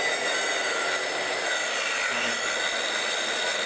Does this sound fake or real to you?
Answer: real